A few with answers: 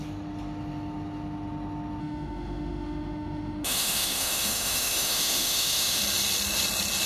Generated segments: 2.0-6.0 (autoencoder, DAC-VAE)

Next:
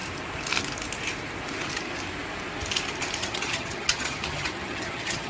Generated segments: 3.2-5.3 (vocoder, HiFi-GAN)

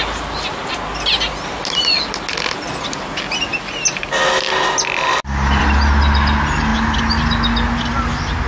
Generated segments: none

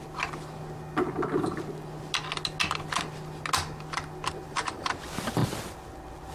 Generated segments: 4.4-4.9 (vocoder, BigVGAN v2)